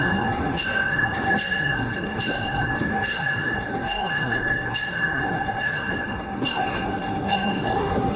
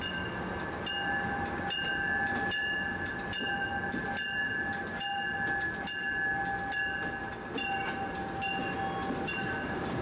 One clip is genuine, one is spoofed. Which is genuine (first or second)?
second